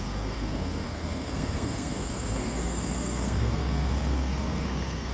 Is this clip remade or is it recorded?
remade